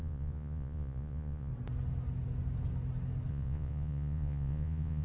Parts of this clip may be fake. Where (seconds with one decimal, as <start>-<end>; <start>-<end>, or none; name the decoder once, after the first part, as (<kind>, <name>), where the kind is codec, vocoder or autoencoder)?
0.0-1.5 (vocoder, Vocos); 3.3-5.0